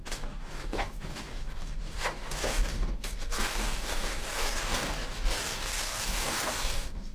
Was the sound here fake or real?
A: fake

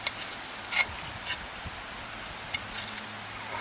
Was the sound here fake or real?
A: real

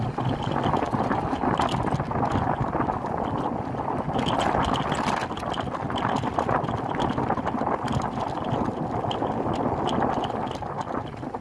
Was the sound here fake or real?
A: real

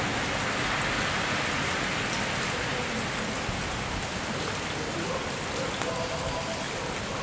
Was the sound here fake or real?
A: real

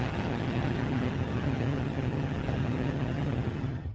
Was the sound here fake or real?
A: fake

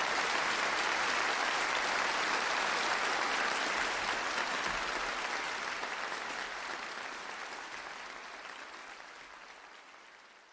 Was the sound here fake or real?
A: real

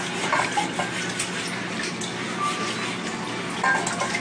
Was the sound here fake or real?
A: real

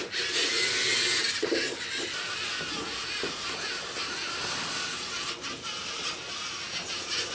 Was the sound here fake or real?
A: real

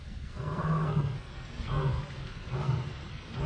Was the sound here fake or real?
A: fake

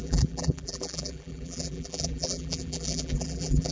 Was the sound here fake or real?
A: fake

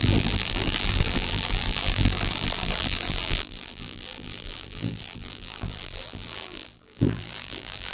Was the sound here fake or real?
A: fake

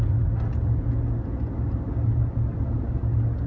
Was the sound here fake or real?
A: real